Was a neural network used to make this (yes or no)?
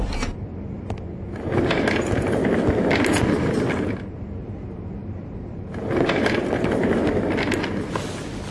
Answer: no